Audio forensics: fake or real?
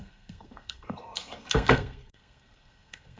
fake